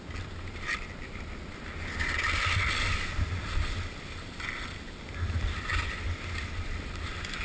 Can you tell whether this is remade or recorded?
recorded